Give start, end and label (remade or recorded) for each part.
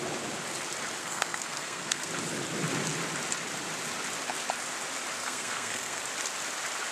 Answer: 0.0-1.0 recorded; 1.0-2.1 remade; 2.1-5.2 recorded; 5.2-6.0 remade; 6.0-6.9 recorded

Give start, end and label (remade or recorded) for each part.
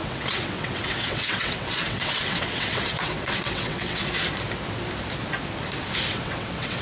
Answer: 0.0-4.0 remade; 4.0-6.1 recorded; 6.1-6.8 remade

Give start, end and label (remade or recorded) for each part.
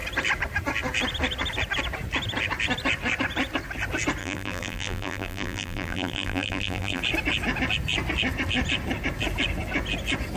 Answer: 0.0-4.2 recorded; 4.2-7.0 remade; 7.0-10.4 recorded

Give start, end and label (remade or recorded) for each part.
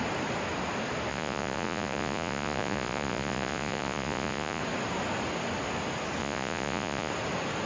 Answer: 0.0-1.1 recorded; 1.1-4.6 remade; 4.6-6.2 recorded; 6.2-7.1 remade; 7.1-7.7 recorded